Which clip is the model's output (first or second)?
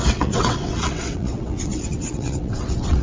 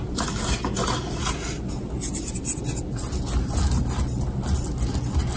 first